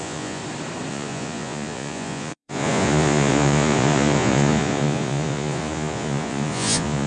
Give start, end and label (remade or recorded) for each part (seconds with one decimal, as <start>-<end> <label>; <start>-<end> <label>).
0.0-0.4 remade; 0.4-0.9 recorded; 0.9-7.1 remade